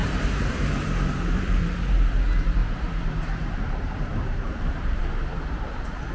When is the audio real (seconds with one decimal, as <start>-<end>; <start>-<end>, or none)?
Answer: 1.7-2.6; 5.0-6.1